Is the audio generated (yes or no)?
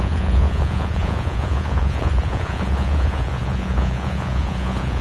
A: yes